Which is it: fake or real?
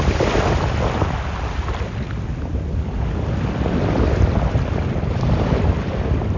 real